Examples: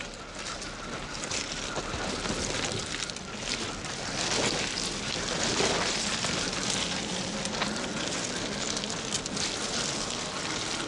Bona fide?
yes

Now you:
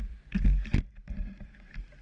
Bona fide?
no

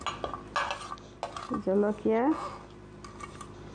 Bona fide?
yes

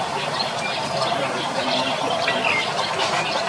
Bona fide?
no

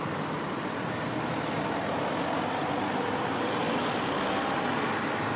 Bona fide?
yes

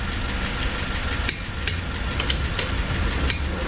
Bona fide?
yes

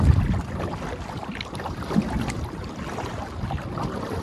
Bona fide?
yes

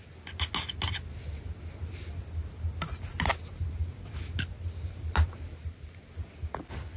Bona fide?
yes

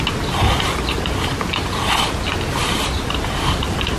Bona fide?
yes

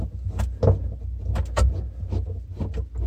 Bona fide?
yes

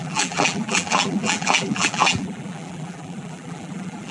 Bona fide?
no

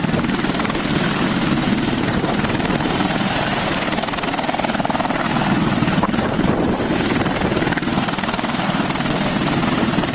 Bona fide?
no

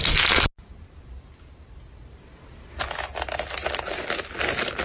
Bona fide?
yes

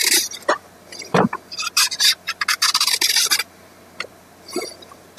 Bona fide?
yes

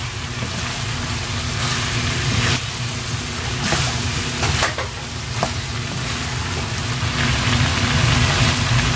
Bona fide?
yes